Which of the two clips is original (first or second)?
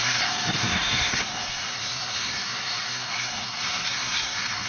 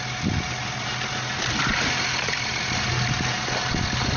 second